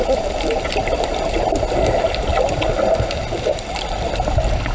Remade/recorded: recorded